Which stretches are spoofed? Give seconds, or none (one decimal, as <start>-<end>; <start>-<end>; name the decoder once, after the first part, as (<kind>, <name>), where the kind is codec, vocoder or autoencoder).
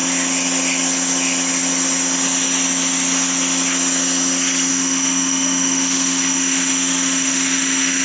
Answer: 4.7-8.0 (autoencoder, DAC-VAE)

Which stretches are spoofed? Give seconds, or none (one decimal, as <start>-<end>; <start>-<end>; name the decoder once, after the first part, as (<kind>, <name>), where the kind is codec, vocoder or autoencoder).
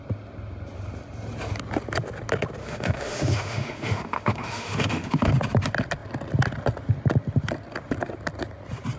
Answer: 2.6-5.3 (autoencoder, DAC-VAE)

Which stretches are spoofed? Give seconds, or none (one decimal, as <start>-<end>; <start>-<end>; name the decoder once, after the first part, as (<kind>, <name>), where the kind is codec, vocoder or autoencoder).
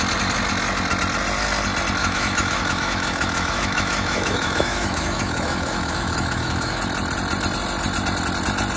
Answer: 2.0-6.8 (autoencoder, DAC-VAE)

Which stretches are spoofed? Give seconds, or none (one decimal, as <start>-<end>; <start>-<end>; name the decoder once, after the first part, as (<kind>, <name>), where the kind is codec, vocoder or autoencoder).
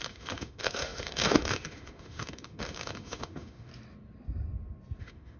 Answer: 0.0-3.7 (autoencoder, DAC-VAE); 5.0-5.4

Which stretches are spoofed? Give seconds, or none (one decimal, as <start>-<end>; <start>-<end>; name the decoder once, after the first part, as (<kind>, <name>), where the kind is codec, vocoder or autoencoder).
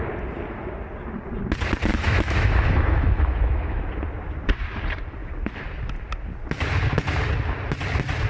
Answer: 1.9-3.8 (autoencoder, DAC-VAE)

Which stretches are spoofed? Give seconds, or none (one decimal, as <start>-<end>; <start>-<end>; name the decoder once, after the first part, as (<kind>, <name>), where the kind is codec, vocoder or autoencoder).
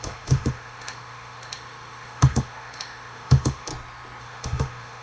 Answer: 0.0-3.7 (autoencoder, DAC-VAE); 4.2-5.0